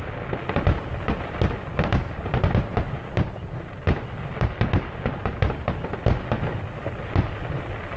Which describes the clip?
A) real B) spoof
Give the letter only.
A